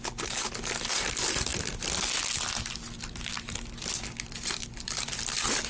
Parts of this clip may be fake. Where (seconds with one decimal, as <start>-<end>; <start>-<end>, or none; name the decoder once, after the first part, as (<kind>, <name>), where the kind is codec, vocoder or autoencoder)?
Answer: none